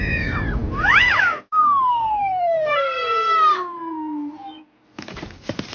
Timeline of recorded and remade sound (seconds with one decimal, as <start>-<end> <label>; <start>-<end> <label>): 0.0-1.6 recorded; 1.6-3.3 remade; 3.3-5.7 recorded